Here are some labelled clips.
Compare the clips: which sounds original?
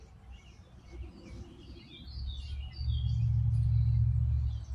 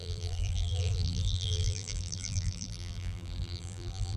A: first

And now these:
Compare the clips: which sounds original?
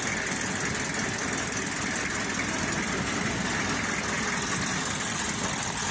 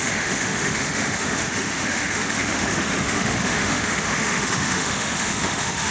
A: first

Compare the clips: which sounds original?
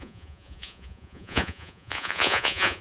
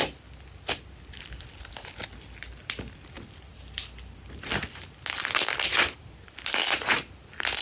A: second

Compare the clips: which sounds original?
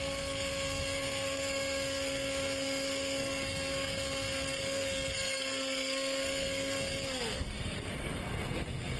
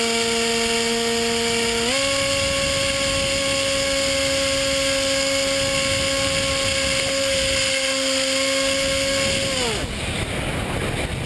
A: second